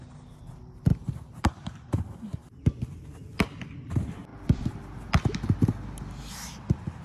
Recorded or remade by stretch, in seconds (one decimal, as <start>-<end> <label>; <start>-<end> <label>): 0.0-0.9 recorded; 0.9-2.6 remade; 2.6-7.0 recorded

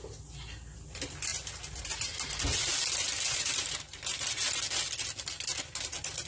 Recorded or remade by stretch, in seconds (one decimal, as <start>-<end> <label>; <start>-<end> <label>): 0.0-6.3 recorded

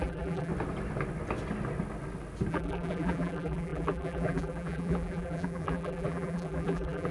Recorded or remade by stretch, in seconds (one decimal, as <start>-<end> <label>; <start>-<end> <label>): 0.0-0.5 remade; 0.5-2.5 recorded; 2.5-7.1 remade